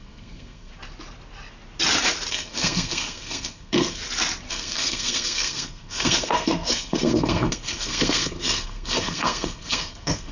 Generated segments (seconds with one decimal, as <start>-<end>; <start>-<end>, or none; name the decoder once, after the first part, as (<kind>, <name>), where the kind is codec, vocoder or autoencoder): 0.0-0.7 (codec, SNAC); 2.3-4.0; 4.5-10.3